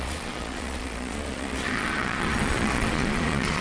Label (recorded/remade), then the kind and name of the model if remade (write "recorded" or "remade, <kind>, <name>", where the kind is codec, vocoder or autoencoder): remade, vocoder, Vocos